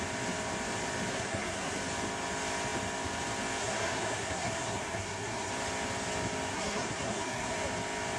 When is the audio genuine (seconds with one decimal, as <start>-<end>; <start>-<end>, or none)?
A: 0.0-1.1; 1.8-3.6; 5.5-6.5; 7.5-8.2